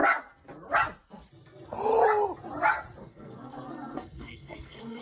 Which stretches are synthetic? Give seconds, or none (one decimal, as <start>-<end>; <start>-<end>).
3.0-5.0